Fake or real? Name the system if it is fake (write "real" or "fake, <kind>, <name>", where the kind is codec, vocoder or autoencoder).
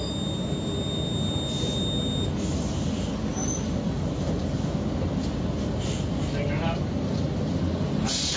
real